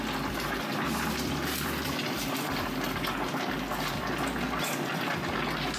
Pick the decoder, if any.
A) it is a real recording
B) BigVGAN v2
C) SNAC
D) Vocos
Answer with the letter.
A